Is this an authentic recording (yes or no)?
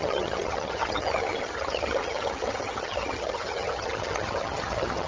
no